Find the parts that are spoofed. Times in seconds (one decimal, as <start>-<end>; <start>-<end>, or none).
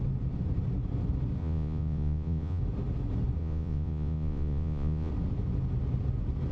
1.4-2.6; 3.4-5.1